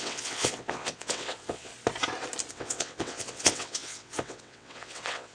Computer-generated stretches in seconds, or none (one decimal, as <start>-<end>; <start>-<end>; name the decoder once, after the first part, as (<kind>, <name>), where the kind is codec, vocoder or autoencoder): 0.0-1.7 (vocoder, WaveNeXt); 2.5-5.3